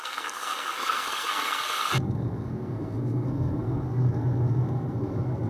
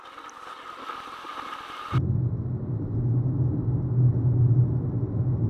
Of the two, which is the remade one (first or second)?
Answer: first